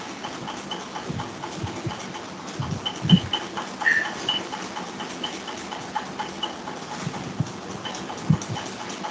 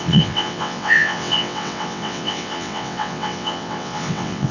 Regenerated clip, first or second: second